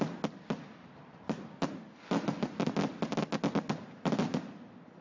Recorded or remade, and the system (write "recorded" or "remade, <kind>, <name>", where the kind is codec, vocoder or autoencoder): recorded